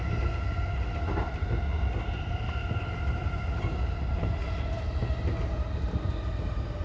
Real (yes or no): yes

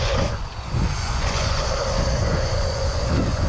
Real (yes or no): no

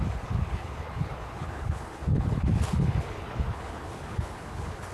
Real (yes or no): no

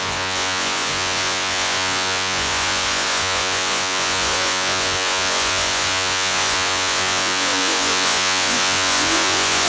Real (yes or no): no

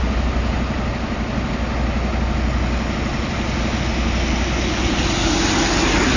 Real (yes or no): yes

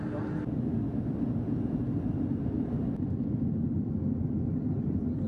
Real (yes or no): yes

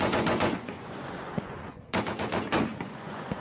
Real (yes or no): no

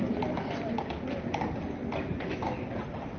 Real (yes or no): yes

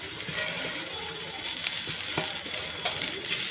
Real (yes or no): yes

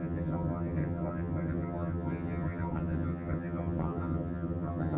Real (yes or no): no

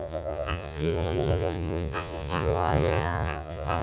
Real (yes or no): no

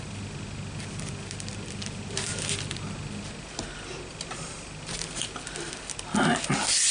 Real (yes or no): yes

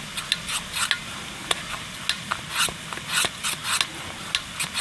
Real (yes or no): yes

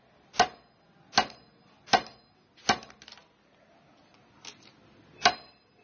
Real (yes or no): yes